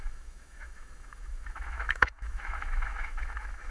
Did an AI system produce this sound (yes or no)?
yes